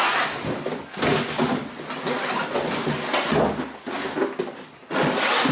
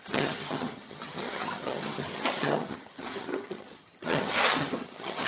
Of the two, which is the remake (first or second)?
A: second